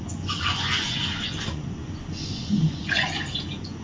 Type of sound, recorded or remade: remade